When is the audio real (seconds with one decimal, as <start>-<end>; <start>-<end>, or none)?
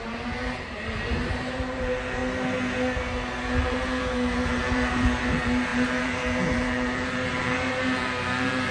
2.2-3.6